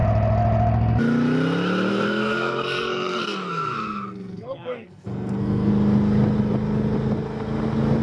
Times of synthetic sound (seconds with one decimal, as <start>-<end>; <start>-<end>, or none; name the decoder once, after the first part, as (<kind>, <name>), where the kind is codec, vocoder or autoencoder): 1.9-5.7 (codec, SNAC)